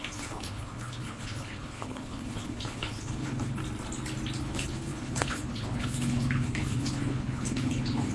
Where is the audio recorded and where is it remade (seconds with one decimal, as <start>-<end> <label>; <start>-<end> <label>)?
0.0-3.6 remade; 3.6-4.4 recorded; 4.4-8.1 remade